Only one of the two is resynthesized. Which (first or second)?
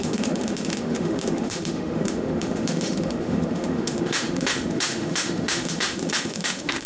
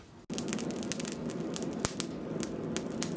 first